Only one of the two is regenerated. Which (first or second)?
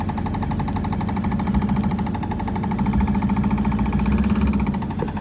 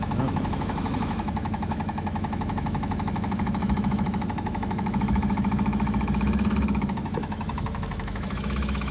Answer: second